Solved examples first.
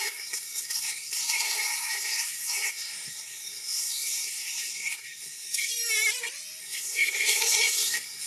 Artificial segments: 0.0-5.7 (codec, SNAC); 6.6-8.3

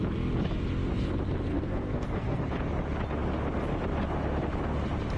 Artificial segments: 1.5-2.4 (codec, SNAC)